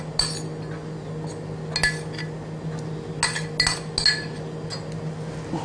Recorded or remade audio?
recorded